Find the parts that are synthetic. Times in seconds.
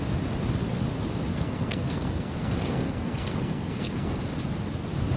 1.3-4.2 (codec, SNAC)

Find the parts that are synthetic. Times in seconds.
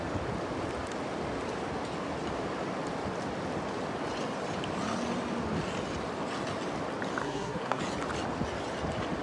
7.2-7.8 (codec, SNAC)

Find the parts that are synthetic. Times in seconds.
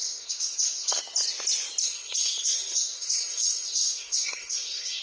0.0-1.0 (codec, SNAC); 1.8-5.0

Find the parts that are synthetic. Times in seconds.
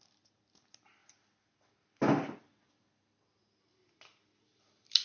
none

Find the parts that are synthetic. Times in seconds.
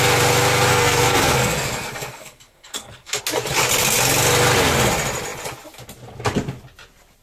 0.7-3.2 (codec, SNAC)